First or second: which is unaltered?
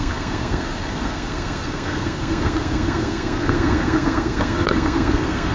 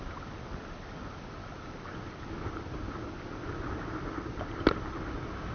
second